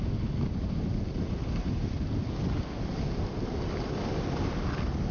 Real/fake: real